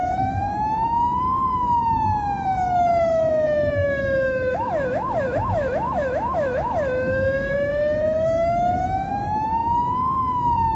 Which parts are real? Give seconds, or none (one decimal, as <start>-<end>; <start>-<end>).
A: none